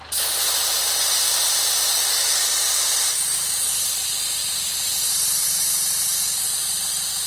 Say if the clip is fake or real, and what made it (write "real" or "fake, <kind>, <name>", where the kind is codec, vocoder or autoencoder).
real